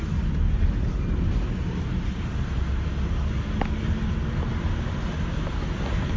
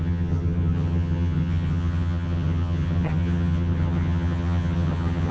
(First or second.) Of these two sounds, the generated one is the second